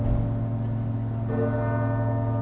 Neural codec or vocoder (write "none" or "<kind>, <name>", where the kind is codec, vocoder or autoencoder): none